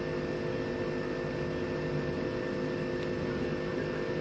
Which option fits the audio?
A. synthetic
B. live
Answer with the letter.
B